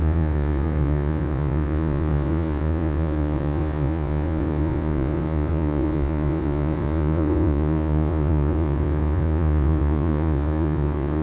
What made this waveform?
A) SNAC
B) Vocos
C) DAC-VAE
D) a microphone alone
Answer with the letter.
B